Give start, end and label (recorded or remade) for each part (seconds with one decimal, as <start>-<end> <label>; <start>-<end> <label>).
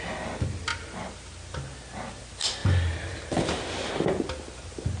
0.0-5.0 recorded